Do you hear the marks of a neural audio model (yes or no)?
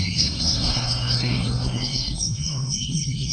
yes